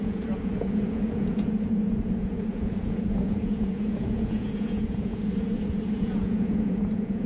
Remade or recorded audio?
remade